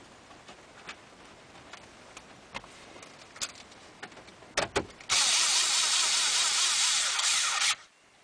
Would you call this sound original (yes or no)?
yes